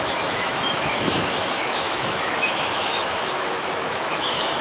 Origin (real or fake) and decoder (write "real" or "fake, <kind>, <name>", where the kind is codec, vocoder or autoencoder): fake, autoencoder, DAC-VAE